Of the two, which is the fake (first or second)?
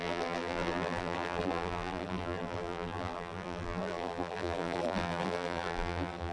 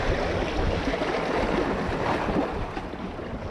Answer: first